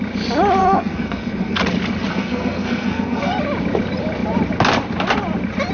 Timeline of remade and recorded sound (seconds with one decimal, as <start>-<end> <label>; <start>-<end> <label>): 0.0-0.6 recorded; 0.6-1.6 remade; 1.6-2.1 recorded; 2.1-3.3 remade; 3.3-5.7 recorded